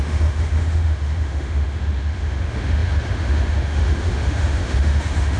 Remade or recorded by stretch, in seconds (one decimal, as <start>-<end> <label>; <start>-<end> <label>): 0.0-5.4 remade

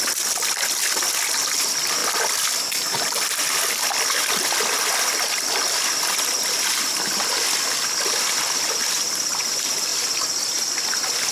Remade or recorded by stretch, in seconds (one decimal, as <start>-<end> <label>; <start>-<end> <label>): 0.0-9.9 recorded; 9.9-10.7 remade; 10.7-11.3 recorded